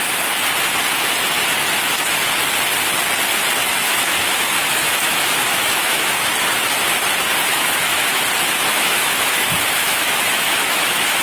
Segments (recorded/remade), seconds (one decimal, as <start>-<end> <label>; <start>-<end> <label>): 0.0-3.6 recorded; 3.6-6.3 remade; 6.3-7.5 recorded; 7.5-8.2 remade; 8.2-8.7 recorded; 8.7-11.2 remade